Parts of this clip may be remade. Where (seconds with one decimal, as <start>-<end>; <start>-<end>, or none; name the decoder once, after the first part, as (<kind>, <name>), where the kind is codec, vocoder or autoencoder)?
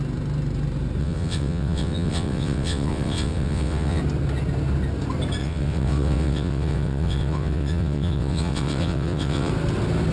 1.0-4.0 (vocoder, WaveNeXt); 5.4-9.5